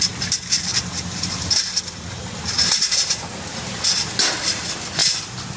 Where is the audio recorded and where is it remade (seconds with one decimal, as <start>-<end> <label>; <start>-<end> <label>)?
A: 0.0-0.7 recorded; 0.7-1.5 remade; 1.5-5.6 recorded